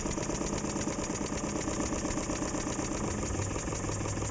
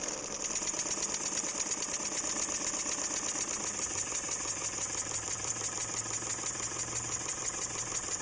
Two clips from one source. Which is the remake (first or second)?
second